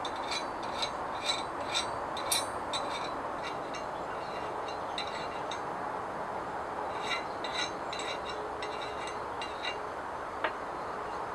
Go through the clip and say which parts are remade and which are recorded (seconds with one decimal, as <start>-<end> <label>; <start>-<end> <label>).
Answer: 0.0-11.3 recorded